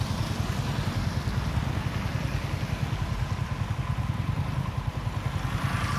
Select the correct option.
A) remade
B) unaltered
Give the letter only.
B